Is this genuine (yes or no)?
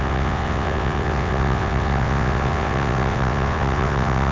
no